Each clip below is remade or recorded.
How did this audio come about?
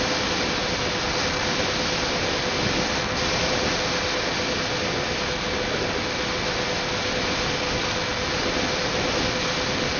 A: recorded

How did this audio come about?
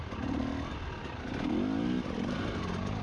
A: recorded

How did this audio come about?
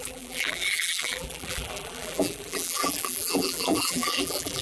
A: remade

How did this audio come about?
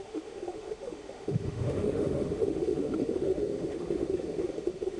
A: remade